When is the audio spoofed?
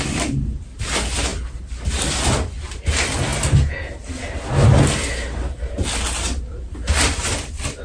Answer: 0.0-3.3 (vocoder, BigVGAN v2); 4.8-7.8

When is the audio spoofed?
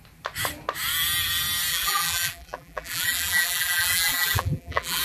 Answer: 1.7-5.0 (vocoder, BigVGAN v2)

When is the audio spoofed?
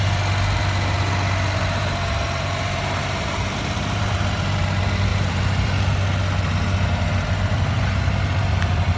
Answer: 1.8-4.6 (vocoder, BigVGAN v2); 5.1-5.7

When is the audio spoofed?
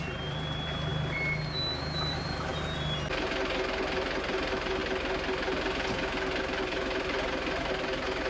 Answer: 0.0-0.9 (vocoder, BigVGAN v2); 2.1-2.5; 4.2-4.8; 6.4-8.3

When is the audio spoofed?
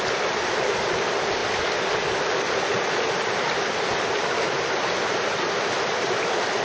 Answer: none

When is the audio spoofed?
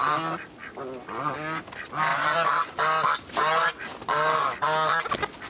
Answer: 2.1-2.8 (vocoder, BigVGAN v2)